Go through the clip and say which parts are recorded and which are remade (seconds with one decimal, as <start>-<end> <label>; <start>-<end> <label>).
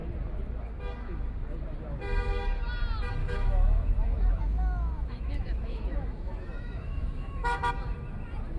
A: 0.0-3.2 recorded; 3.2-7.7 remade; 7.7-8.6 recorded